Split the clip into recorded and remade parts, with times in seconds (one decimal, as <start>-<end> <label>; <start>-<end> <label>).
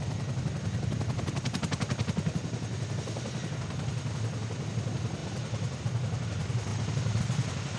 0.0-5.2 recorded; 5.2-5.8 remade; 5.8-6.7 recorded; 6.7-7.2 remade; 7.2-7.8 recorded